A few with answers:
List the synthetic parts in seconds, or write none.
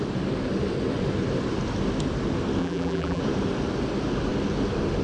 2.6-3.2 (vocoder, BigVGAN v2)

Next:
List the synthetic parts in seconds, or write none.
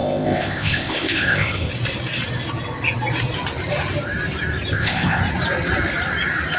0.0-1.7 (codec, ZipCodec); 4.7-5.2